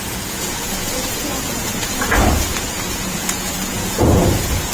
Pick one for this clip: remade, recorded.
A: remade